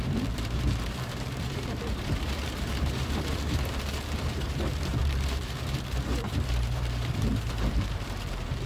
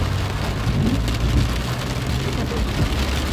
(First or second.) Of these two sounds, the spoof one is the first